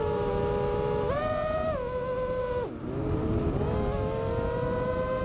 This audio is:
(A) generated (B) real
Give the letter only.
B